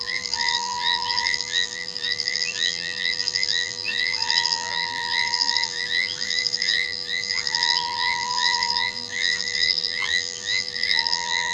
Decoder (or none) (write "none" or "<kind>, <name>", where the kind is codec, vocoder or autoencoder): vocoder, BigVGAN v2